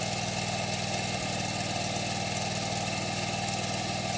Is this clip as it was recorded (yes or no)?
yes